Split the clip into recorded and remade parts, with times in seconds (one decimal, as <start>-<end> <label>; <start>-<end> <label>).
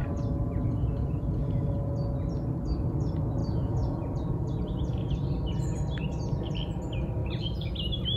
0.0-1.9 remade; 1.9-3.4 recorded; 3.4-5.1 remade; 5.1-7.2 recorded; 7.2-7.7 remade; 7.7-8.2 recorded